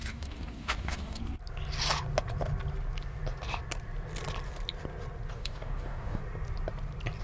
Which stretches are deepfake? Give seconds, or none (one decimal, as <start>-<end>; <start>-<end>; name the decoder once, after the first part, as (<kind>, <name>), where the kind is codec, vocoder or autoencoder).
0.0-1.2 (codec, DAC); 5.3-6.2